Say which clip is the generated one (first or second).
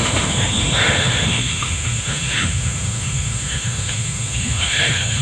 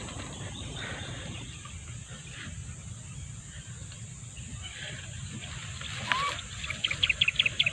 first